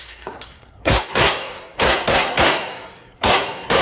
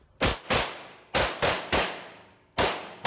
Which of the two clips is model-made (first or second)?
first